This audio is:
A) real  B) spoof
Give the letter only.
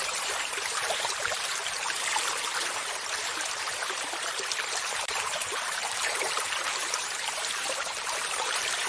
B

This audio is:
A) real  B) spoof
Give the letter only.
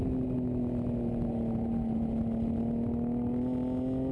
A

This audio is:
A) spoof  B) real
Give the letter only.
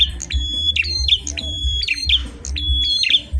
A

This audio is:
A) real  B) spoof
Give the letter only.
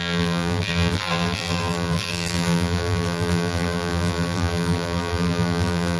B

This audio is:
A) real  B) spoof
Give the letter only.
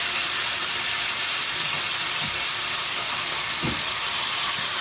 A